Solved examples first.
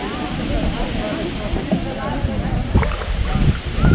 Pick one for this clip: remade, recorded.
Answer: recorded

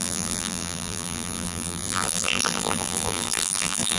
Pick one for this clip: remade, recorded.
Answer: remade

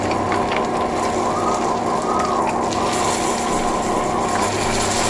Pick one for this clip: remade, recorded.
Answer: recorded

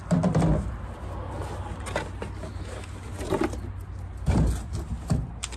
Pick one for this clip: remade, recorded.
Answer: recorded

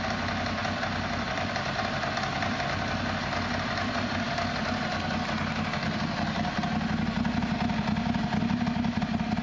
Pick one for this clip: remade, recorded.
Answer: recorded